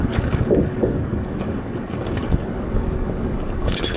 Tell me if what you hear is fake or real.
fake